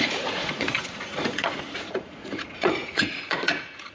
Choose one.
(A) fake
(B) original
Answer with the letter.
A